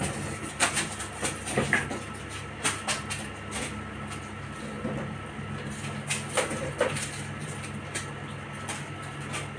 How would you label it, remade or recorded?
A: recorded